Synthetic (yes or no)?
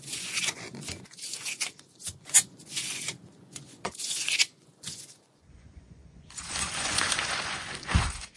yes